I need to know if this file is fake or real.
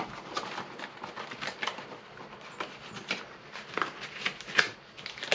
real